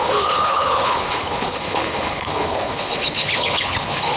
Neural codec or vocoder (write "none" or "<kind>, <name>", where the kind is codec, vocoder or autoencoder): codec, HILCodec